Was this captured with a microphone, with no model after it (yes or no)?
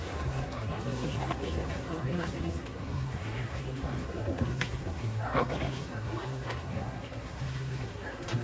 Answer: no